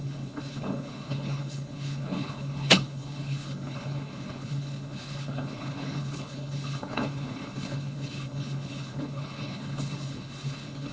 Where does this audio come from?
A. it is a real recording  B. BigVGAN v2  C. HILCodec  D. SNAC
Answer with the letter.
C